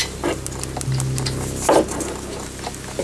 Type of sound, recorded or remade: recorded